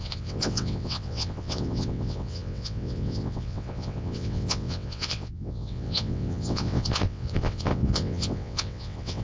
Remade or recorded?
remade